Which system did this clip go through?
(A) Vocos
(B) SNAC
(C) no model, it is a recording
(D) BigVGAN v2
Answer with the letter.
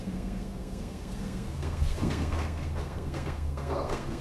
B